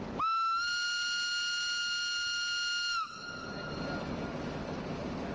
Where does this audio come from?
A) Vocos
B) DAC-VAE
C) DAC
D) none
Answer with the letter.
D